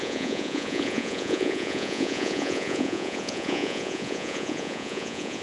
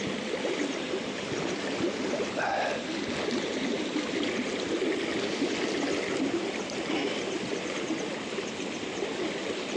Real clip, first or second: second